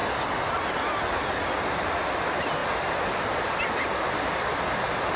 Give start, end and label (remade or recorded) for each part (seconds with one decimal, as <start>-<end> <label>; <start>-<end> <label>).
0.0-5.2 recorded